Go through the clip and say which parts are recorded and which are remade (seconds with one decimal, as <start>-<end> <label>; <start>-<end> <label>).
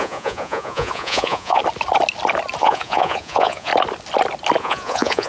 0.0-1.6 remade; 1.6-2.6 recorded; 2.6-3.7 remade; 3.7-4.6 recorded; 4.6-5.3 remade